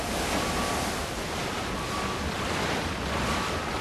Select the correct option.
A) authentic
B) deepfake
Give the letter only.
A